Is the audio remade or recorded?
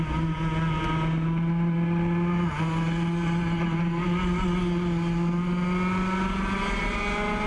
recorded